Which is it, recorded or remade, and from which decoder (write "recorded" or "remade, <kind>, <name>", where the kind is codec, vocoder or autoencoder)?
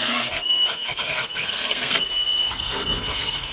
remade, codec, SNAC